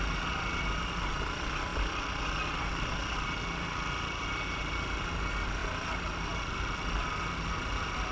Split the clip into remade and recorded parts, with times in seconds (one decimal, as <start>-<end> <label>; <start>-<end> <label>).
0.0-8.1 recorded